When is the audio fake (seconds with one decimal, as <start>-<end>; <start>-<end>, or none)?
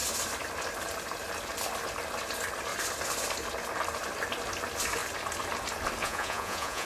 6.0-6.9